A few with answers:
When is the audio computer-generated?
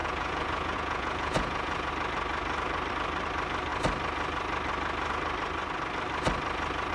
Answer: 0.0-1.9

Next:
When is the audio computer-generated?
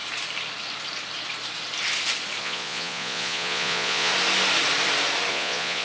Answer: 2.4-4.1; 5.3-5.8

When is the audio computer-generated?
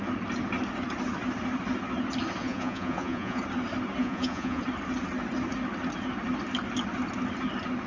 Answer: 2.4-3.4; 4.0-4.6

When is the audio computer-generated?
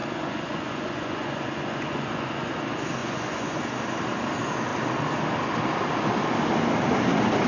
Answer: 0.0-2.5; 3.0-3.6